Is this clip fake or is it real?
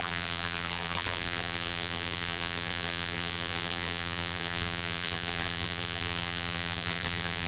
fake